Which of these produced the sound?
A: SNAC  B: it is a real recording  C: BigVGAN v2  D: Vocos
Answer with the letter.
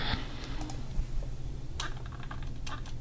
B